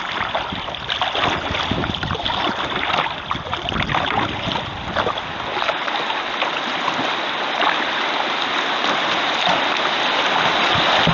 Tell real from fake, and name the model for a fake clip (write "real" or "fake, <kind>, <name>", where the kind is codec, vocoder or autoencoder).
real